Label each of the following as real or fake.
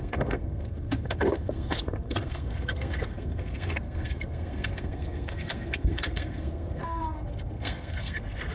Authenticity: fake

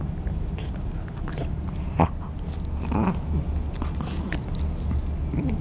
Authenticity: real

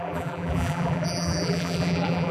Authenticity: fake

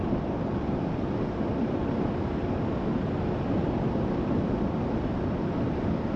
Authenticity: real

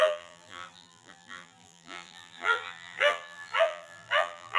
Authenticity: fake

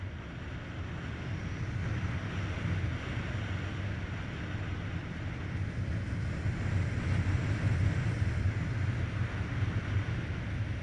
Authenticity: real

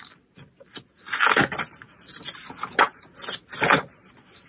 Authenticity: real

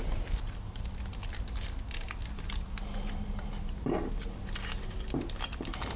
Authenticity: real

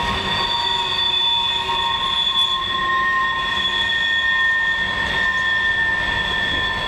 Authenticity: real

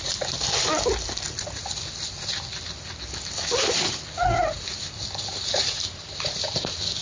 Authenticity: real